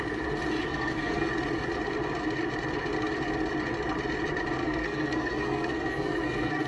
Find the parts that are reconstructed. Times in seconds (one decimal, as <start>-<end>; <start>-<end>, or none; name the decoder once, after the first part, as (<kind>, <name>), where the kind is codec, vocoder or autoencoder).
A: 0.7-1.3 (codec, SNAC); 4.6-6.7